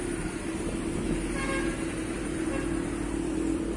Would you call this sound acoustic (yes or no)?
yes